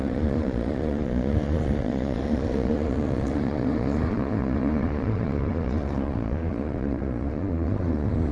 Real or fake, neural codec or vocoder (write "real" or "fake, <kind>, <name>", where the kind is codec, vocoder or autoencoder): fake, vocoder, Vocos